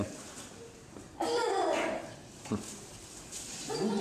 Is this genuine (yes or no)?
yes